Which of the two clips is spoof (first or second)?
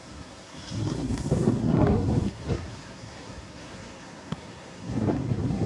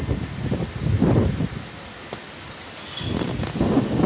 first